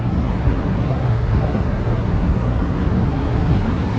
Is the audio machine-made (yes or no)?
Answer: yes